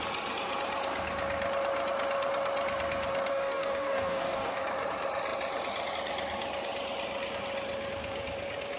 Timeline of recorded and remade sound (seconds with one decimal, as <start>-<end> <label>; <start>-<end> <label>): 0.0-3.3 recorded; 3.3-4.6 remade; 4.6-8.8 recorded